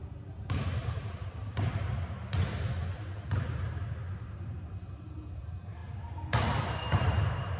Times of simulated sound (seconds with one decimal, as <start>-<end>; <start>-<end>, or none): 0.0-5.8; 6.7-7.6